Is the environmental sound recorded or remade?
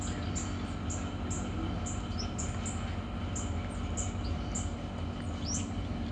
recorded